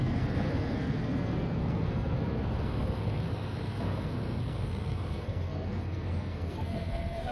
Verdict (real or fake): fake